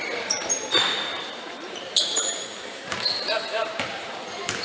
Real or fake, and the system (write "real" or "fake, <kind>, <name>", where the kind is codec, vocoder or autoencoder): fake, vocoder, BigVGAN v2